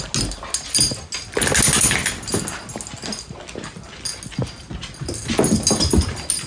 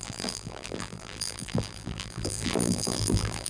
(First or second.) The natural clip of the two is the first